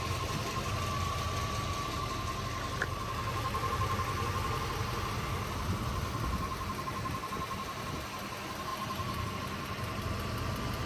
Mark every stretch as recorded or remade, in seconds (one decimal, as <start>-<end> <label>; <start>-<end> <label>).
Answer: 0.0-10.9 recorded